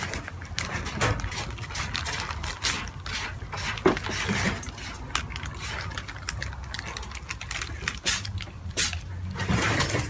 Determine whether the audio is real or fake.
real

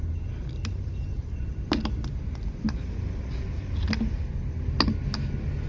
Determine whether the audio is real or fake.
real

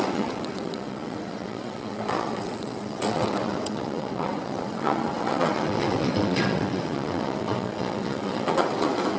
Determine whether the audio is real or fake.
fake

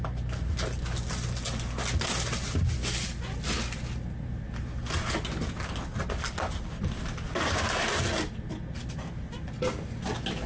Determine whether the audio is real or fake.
real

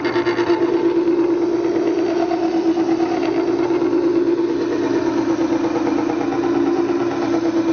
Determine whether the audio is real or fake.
real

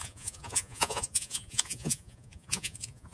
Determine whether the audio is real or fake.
fake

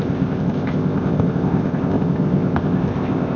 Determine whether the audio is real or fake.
fake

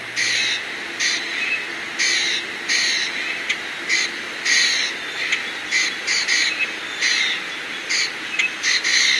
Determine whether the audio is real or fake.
real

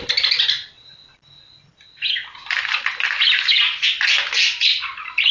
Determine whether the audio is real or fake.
real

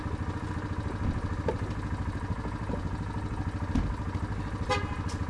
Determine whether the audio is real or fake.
real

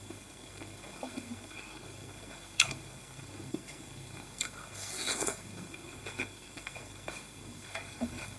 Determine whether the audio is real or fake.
fake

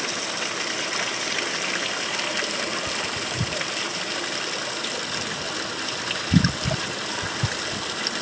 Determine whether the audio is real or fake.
real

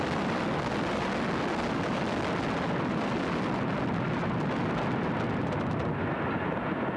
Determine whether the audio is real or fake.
real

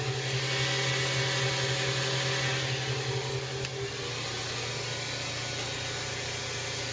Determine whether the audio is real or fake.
real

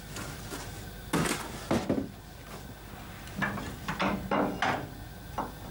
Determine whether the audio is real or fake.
real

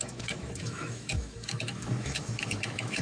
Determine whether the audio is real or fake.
fake